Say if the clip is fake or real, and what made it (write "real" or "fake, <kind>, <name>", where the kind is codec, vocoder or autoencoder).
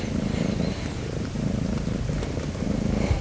real